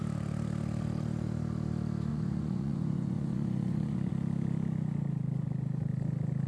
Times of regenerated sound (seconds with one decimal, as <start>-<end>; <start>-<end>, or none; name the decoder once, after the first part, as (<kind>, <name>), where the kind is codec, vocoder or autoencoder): 2.1-4.1 (vocoder, Vocos)

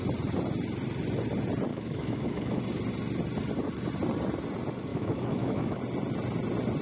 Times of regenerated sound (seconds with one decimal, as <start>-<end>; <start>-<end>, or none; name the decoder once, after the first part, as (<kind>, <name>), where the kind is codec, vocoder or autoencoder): 1.7-2.6 (autoencoder, DAC-VAE); 4.9-5.8

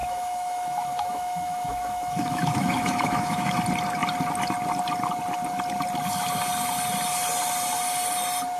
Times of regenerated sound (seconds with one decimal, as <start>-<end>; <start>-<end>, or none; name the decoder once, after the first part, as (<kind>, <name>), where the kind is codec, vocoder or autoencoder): 0.0-3.6 (autoencoder, DAC-VAE)

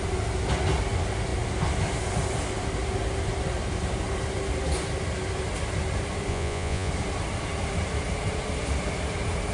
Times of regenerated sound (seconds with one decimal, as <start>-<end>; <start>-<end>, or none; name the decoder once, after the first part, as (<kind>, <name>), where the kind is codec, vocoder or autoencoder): 6.3-6.9 (vocoder, Vocos)

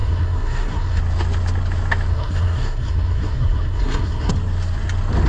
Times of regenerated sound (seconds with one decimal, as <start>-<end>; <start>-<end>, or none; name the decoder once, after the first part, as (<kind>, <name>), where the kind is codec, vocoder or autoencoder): 0.0-1.0 (codec, SNAC); 2.1-4.3

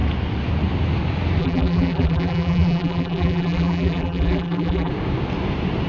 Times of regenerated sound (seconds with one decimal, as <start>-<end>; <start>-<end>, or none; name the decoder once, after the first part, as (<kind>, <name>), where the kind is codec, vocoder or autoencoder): 1.4-4.9 (vocoder, BigVGAN v2)